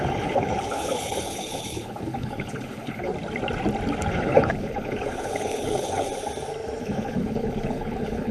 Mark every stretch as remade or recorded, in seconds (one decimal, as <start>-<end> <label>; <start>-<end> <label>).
0.0-3.1 remade; 3.1-4.1 recorded; 4.1-6.1 remade; 6.1-6.8 recorded; 6.8-8.3 remade